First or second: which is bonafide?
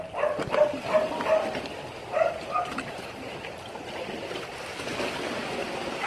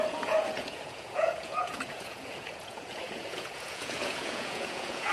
first